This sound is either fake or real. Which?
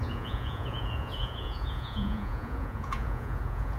fake